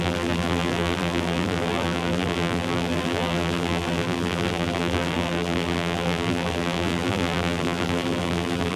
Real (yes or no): no